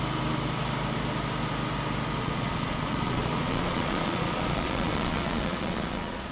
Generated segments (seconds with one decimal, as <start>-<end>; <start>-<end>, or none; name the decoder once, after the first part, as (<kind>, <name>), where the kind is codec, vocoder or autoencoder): 2.2-6.3 (vocoder, Vocos)